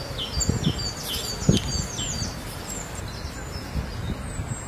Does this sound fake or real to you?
real